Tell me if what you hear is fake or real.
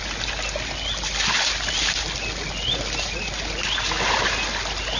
real